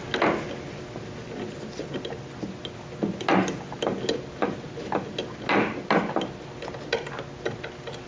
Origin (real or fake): real